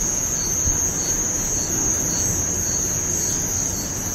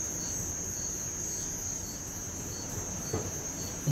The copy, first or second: second